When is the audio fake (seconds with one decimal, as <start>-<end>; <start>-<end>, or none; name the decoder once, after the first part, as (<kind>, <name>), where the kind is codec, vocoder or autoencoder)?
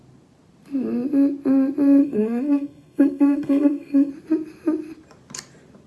2.0-4.1 (codec, SNAC)